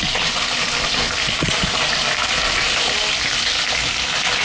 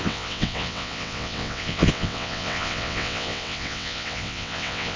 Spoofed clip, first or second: second